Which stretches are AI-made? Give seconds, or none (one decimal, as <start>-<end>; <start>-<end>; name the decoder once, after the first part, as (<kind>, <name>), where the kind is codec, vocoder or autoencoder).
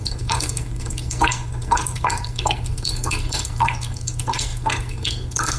0.0-5.6 (codec, SNAC)